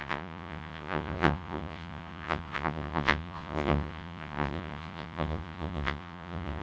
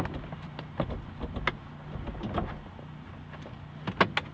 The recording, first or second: second